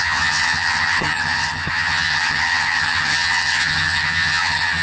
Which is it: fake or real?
fake